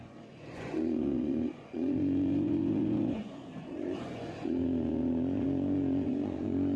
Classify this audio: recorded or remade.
remade